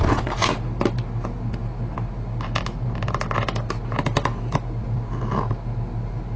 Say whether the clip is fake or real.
real